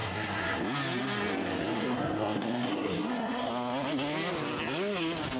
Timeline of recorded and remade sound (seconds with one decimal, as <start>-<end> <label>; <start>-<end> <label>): 0.0-0.6 remade; 0.6-1.6 recorded; 1.6-3.5 remade; 3.5-5.4 recorded